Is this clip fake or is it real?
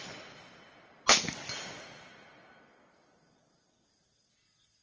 real